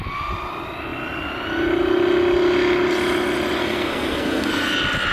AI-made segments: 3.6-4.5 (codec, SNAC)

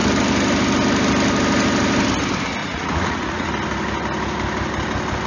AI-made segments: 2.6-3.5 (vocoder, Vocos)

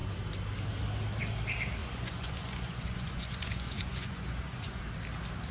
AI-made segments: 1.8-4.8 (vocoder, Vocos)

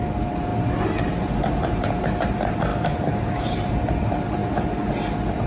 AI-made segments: 2.7-3.4 (autoencoder, DAC-VAE)

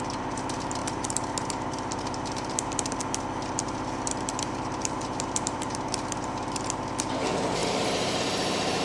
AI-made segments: 0.0-8.8 (vocoder, BigVGAN v2)